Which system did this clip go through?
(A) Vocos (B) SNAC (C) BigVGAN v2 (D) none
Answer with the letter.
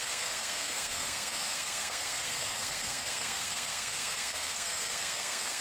B